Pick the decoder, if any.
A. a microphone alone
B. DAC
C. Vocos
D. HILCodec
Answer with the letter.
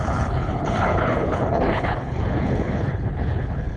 D